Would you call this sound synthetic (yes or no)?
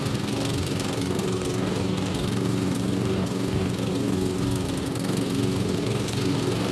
yes